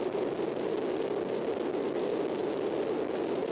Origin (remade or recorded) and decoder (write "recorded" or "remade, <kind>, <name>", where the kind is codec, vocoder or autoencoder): recorded